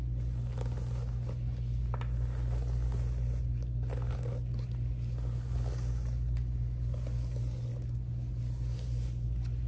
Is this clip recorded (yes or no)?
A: yes